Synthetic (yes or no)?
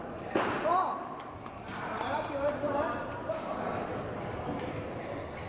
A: yes